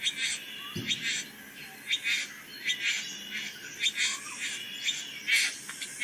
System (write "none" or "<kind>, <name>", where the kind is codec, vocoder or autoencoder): none